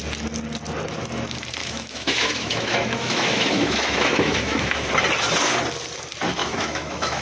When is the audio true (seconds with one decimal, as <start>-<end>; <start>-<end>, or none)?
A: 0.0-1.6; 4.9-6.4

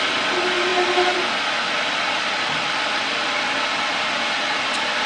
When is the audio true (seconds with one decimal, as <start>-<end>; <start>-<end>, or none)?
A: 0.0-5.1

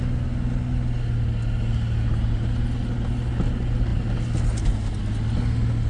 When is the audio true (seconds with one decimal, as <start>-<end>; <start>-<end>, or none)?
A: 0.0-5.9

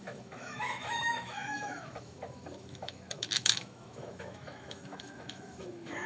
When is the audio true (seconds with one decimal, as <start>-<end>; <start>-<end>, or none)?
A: none

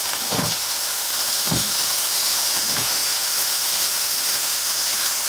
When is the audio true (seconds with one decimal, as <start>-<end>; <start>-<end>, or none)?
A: none

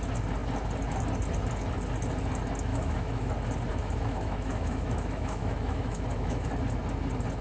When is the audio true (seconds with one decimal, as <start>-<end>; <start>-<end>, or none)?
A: 0.0-2.7; 3.3-3.7; 6.5-7.4

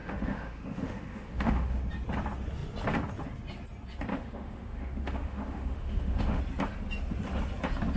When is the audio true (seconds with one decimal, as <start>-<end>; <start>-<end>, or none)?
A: 1.8-4.1; 6.4-8.0